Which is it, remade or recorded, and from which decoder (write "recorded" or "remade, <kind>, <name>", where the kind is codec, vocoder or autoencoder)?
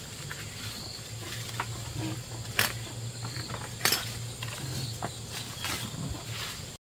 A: recorded